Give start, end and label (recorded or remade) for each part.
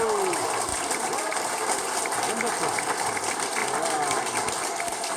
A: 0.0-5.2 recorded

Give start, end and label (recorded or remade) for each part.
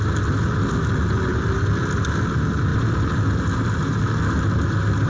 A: 0.0-5.1 recorded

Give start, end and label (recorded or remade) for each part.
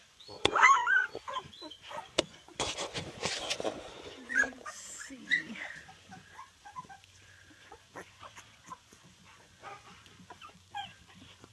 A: 0.0-11.5 remade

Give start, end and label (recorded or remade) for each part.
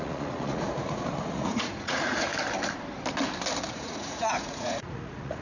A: 0.0-2.3 remade; 2.3-3.7 recorded; 3.7-5.4 remade